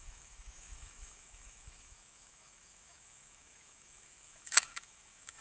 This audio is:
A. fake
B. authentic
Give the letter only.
A